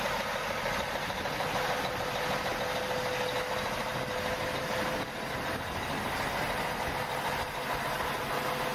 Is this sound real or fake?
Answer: real